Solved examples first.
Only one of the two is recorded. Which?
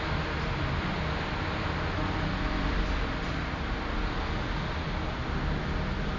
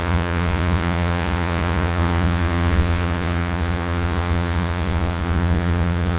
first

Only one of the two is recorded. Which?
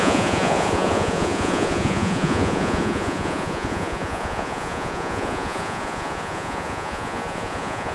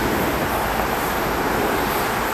second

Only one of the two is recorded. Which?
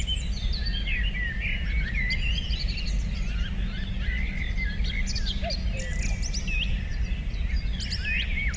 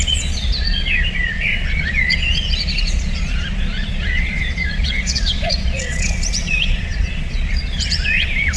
first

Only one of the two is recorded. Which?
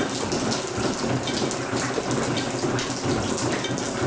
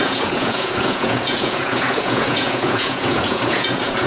first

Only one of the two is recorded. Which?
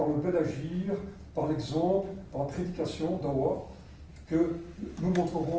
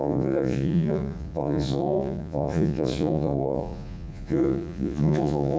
first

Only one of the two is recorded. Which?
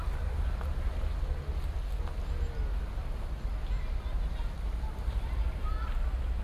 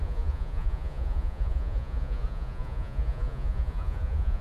first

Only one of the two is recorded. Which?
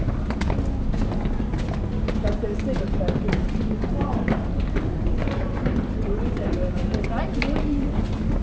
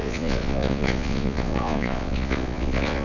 first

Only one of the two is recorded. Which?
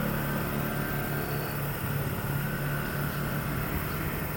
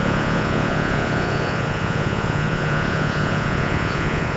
first